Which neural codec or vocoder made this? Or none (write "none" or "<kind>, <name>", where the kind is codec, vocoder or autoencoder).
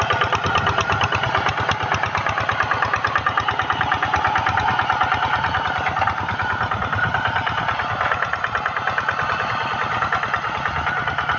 none